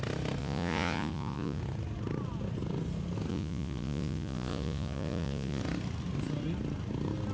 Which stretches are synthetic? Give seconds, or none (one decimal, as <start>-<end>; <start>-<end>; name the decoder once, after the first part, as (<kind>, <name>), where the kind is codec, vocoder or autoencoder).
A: 0.4-1.6 (vocoder, Vocos); 3.3-5.6